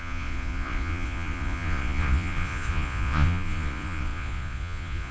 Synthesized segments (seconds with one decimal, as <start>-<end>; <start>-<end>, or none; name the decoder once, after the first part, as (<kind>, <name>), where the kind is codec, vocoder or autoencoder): 0.0-5.1 (vocoder, Vocos)